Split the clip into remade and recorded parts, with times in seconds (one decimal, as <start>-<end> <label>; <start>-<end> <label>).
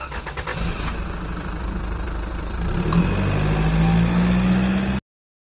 0.0-0.5 recorded; 0.5-3.0 remade; 3.0-5.5 recorded